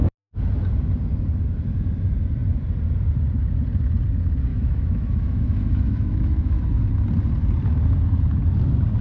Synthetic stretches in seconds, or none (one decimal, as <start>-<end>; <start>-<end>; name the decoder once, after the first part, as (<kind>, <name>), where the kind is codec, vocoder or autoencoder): 4.5-6.8 (autoencoder, DAC-VAE)